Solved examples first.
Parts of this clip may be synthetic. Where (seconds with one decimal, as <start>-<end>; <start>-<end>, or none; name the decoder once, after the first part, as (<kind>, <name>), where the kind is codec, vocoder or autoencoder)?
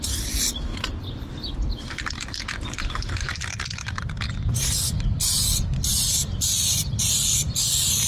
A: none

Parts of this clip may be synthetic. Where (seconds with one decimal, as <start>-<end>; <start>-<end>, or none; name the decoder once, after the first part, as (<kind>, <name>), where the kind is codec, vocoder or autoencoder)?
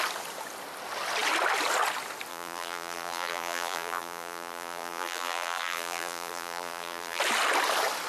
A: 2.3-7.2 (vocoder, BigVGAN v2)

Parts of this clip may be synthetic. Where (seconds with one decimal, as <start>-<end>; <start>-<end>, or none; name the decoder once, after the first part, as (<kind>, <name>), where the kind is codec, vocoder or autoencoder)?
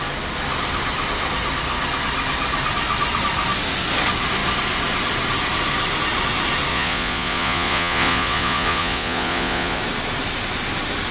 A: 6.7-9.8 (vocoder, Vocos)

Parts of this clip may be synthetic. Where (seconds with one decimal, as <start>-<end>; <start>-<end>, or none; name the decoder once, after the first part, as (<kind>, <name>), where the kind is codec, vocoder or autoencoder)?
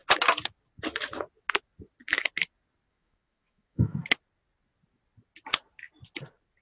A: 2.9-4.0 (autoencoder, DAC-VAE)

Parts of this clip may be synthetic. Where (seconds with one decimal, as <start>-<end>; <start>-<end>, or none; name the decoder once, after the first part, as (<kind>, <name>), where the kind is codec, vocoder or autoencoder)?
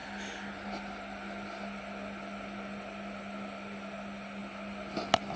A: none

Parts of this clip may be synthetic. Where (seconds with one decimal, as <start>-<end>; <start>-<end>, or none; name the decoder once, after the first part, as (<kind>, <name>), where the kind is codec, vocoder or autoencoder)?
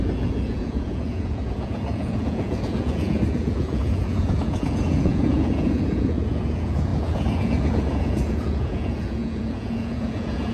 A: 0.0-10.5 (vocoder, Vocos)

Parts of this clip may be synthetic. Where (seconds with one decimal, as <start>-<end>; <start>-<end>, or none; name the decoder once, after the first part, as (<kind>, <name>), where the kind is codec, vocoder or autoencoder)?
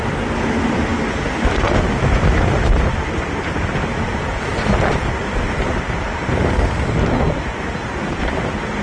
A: none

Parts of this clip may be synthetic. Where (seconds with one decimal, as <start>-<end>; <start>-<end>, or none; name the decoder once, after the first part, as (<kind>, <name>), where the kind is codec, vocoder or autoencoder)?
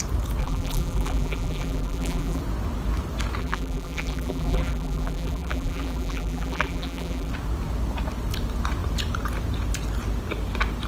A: 0.4-2.4 (vocoder, BigVGAN v2); 3.4-7.3